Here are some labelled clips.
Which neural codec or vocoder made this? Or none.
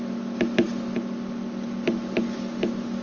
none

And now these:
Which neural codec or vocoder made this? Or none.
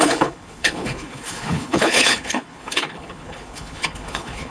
codec, HILCodec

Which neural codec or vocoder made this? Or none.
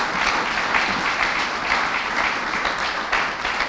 none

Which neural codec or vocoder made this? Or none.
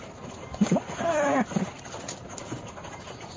none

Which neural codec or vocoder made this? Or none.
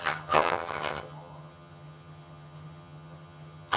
vocoder, HiFi-GAN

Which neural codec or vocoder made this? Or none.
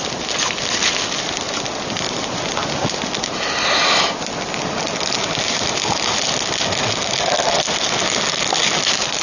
none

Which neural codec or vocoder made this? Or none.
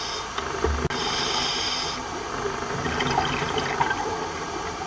none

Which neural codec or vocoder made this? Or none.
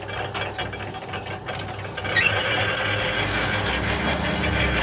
none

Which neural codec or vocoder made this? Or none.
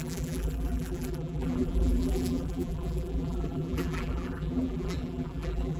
vocoder, BigVGAN v2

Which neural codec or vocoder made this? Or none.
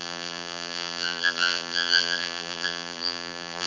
vocoder, BigVGAN v2